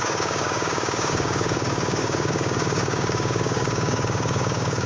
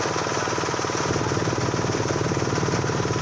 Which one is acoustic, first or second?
second